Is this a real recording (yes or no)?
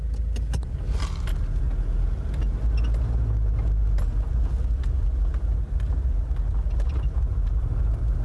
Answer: yes